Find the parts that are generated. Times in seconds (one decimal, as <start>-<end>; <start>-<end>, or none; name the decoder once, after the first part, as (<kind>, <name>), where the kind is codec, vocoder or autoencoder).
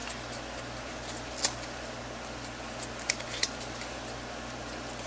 none